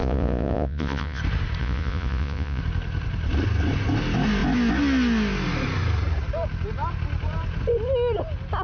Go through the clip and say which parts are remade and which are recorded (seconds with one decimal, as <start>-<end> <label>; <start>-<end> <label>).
0.0-1.2 remade; 1.2-1.6 recorded; 1.6-2.6 remade; 2.6-8.6 recorded